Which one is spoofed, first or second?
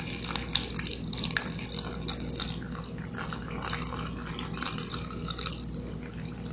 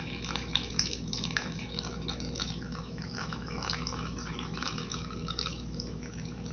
second